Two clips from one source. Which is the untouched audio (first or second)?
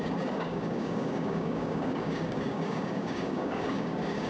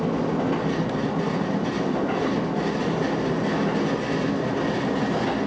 second